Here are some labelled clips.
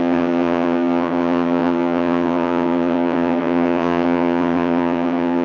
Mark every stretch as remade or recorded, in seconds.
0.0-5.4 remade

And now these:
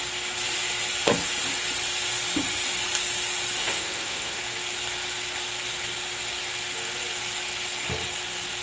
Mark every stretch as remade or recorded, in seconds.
0.0-3.6 recorded; 3.6-4.4 remade; 4.4-8.6 recorded

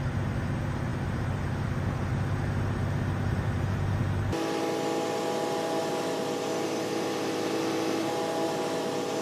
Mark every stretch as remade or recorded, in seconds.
0.0-9.2 recorded

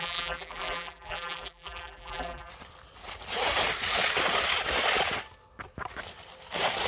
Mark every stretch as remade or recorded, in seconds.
0.0-2.5 remade; 2.5-6.9 recorded

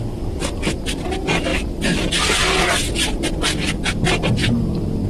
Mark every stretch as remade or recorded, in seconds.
0.0-5.1 recorded